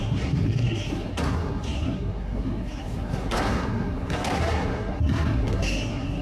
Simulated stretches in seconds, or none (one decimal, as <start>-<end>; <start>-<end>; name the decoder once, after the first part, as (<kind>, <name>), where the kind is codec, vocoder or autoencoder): 0.0-6.2 (codec, SNAC)

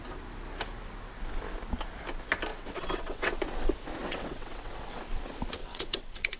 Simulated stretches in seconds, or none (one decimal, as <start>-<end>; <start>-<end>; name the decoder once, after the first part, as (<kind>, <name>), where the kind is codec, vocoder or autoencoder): 2.5-3.3 (vocoder, WaveNeXt); 4.0-5.0; 5.6-6.4